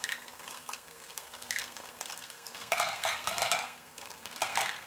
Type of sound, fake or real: fake